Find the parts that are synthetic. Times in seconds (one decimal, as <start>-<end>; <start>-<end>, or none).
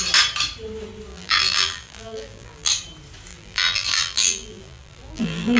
1.1-2.7; 3.3-5.6